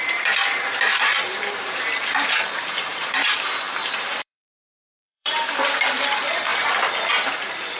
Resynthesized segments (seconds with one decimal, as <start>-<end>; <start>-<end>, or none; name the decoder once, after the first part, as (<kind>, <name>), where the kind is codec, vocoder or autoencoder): 0.0-6.5 (vocoder, BigVGAN v2); 7.1-7.8